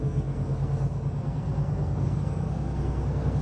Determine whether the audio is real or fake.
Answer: fake